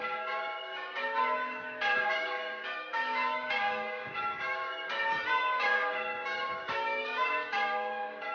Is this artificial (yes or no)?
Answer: yes